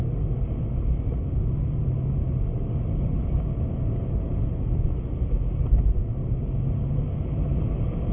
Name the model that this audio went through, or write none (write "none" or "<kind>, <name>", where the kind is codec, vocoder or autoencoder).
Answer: none